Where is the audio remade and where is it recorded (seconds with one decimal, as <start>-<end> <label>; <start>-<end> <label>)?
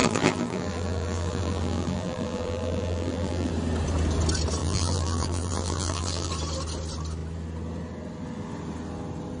0.0-3.5 remade; 3.5-4.6 recorded; 4.6-6.3 remade; 6.3-9.4 recorded